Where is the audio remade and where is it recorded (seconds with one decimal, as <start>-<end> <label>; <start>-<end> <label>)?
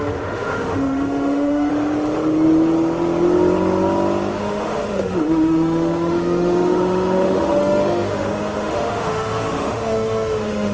0.0-1.7 remade; 1.7-4.3 recorded; 4.3-10.7 remade